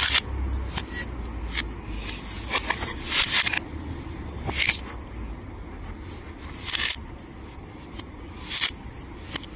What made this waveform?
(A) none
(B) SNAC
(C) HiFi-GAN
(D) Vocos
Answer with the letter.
A